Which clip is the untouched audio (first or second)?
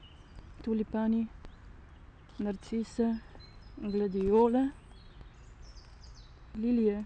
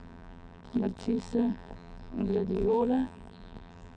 first